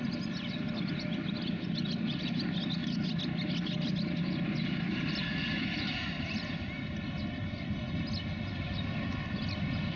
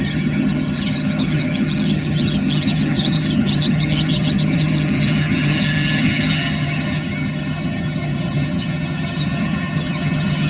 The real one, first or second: first